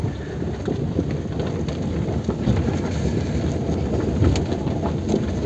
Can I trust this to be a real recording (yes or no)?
yes